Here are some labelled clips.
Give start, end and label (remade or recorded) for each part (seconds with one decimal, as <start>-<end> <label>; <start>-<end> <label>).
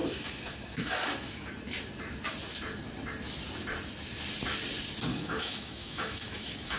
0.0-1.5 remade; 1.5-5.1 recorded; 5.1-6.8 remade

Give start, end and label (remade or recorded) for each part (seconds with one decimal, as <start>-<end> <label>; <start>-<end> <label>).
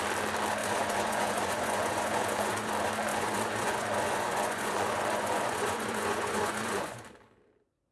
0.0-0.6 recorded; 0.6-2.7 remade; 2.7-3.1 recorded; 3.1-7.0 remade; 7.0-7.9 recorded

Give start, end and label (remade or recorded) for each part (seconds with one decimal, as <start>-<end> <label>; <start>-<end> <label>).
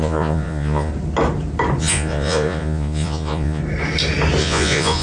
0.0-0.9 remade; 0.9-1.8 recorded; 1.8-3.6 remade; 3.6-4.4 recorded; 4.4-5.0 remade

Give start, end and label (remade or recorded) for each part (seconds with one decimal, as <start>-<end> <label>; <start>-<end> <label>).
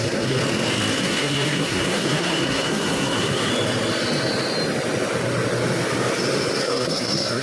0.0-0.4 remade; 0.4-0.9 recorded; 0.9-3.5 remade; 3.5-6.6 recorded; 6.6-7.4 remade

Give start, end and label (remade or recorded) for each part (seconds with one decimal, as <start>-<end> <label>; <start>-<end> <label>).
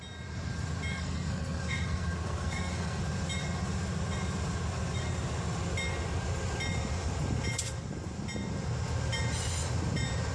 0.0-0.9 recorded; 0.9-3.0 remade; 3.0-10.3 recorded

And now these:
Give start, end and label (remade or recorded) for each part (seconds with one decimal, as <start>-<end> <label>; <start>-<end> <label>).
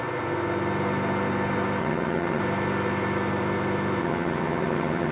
0.0-1.8 recorded; 1.8-2.4 remade; 2.4-4.0 recorded; 4.0-5.1 remade